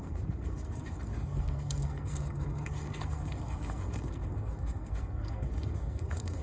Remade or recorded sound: remade